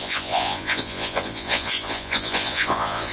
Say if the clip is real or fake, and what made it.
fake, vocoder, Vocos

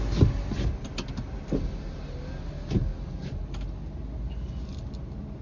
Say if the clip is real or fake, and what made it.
real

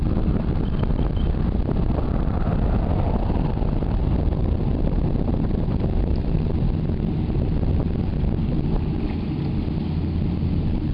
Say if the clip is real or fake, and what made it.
real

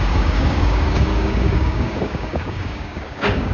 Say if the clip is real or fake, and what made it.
fake, codec, DAC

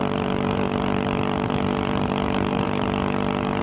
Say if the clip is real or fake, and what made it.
fake, vocoder, BigVGAN v2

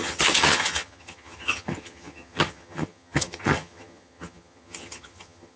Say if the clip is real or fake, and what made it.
fake, vocoder, HiFi-GAN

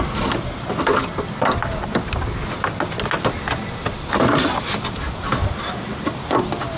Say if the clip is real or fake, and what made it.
real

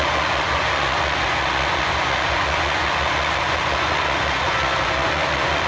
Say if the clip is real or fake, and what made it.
fake, vocoder, Vocos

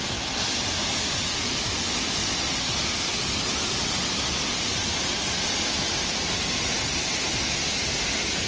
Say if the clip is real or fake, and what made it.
real